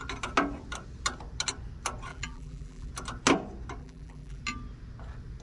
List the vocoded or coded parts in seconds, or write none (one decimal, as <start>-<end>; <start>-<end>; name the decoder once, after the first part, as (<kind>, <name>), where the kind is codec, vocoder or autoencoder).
2.1-2.9 (vocoder, BigVGAN v2); 3.8-4.4